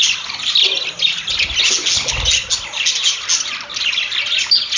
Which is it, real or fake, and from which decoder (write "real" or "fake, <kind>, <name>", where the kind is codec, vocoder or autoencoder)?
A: real